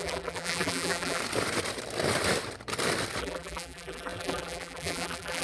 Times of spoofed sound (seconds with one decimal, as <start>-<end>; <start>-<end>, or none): 0.0-1.2; 3.2-5.4